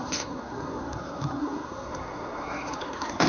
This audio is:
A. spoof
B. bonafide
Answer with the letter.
A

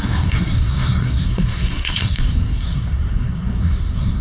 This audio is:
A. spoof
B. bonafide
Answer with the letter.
A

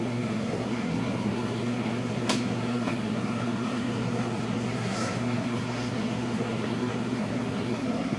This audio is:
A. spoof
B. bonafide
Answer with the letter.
A